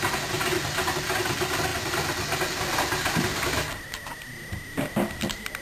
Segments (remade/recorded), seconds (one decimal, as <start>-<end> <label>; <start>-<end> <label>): 0.0-5.6 recorded